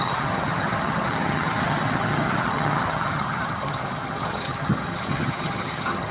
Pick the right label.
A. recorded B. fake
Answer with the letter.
B